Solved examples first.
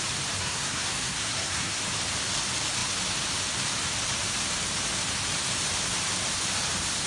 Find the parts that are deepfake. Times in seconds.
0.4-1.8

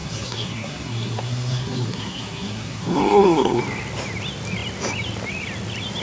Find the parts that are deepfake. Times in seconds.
0.0-3.6

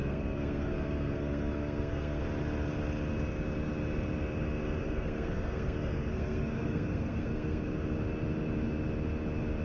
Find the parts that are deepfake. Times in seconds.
0.0-2.2; 4.8-7.7

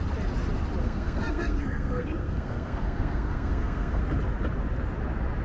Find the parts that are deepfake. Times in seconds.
0.8-4.0

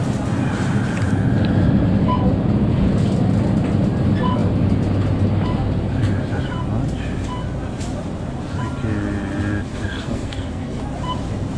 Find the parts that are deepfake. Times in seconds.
9.7-10.8

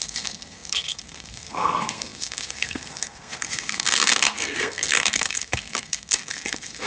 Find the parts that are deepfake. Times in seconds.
0.0-6.9

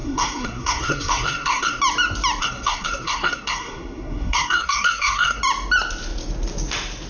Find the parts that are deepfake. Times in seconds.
0.0-1.8; 2.4-5.4

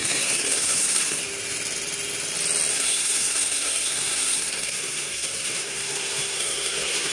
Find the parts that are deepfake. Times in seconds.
0.0-1.2; 2.7-7.1